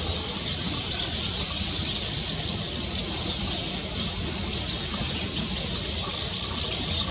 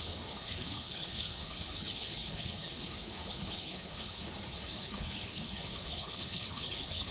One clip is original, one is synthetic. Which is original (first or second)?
first